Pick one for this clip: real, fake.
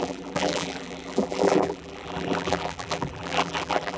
fake